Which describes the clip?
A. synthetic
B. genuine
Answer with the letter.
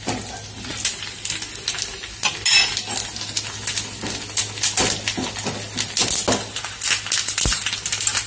B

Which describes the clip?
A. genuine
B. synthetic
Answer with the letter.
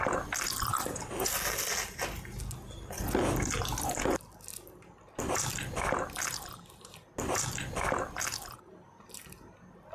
A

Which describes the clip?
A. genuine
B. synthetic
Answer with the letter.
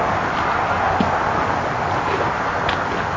A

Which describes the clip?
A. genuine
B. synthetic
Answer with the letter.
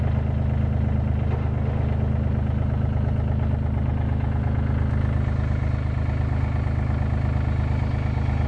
A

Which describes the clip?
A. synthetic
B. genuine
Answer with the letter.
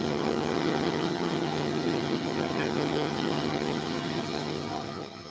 A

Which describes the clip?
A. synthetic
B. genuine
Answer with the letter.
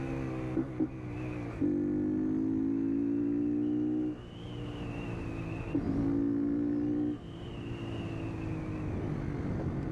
B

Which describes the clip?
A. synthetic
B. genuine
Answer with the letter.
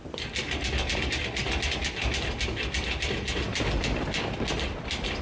B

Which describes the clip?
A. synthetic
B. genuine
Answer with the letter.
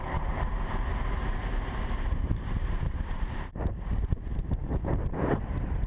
A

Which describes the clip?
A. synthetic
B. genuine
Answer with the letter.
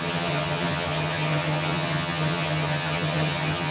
A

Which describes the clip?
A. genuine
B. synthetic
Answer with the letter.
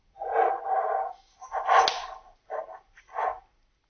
A